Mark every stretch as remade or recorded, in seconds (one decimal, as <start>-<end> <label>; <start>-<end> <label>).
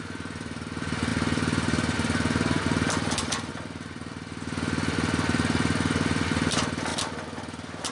0.0-7.9 recorded